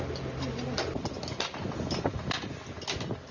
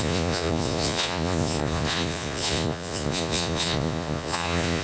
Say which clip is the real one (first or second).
first